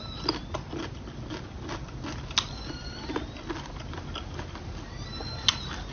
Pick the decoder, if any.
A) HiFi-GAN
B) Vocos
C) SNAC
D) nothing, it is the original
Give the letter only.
D